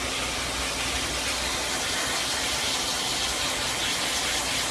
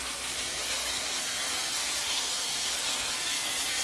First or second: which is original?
first